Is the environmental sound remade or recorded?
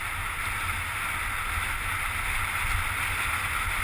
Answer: recorded